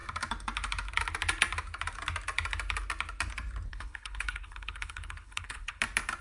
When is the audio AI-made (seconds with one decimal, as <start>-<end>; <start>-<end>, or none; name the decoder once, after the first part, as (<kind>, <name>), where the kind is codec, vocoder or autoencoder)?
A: 3.7-5.8 (codec, HILCodec)